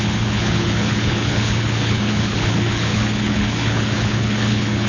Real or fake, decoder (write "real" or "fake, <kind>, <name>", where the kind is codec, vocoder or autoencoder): fake, codec, HILCodec